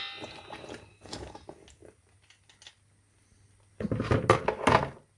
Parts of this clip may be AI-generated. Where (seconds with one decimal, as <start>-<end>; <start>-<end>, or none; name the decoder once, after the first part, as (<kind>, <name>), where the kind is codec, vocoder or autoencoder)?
0.9-1.4 (autoencoder, DAC-VAE)